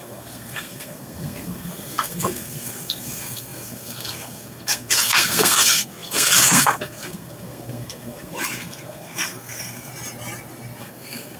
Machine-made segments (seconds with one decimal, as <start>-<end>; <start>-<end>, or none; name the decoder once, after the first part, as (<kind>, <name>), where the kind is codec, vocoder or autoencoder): 0.0-9.9 (codec, SNAC); 10.8-11.4